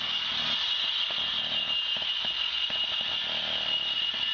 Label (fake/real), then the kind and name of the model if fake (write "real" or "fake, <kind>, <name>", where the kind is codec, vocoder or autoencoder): real